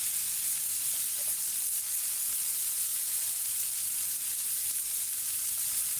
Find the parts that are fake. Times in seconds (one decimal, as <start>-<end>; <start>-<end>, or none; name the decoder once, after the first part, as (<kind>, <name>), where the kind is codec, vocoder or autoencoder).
none